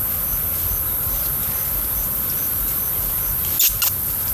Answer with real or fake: real